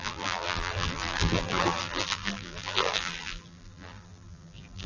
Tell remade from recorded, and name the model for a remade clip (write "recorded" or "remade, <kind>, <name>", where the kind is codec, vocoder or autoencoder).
remade, vocoder, BigVGAN v2